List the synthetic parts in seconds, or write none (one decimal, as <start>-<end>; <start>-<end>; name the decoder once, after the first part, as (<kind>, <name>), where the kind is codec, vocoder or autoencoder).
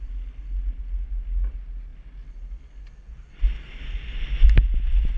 none